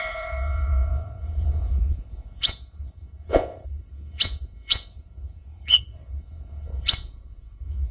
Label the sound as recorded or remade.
remade